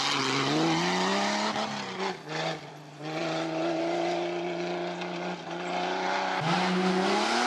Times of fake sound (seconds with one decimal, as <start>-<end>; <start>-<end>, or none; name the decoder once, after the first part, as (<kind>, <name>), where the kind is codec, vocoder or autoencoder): none